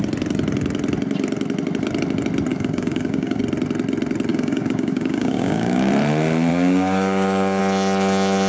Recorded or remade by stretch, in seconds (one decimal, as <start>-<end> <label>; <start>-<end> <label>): 0.0-2.5 recorded; 2.5-3.4 remade; 3.4-4.3 recorded; 4.3-5.9 remade; 5.9-6.5 recorded; 6.5-7.6 remade; 7.6-8.5 recorded